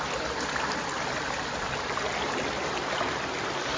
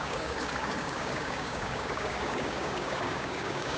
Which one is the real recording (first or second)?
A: first